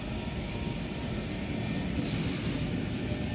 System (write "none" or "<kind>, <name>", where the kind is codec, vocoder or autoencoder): none